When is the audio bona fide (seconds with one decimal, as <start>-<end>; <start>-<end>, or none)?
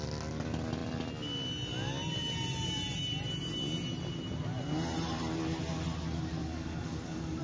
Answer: 0.0-6.4